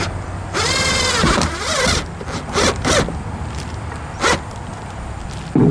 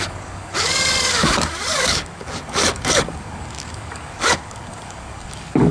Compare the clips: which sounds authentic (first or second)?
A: first